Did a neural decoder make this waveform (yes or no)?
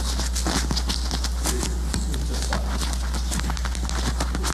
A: no